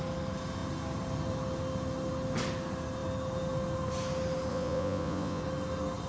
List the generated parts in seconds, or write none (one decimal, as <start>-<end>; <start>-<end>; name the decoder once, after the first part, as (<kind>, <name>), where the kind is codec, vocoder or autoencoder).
4.5-5.4 (vocoder, Vocos)